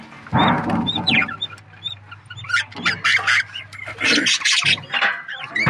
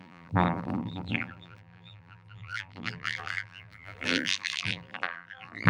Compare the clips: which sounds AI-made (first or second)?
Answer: second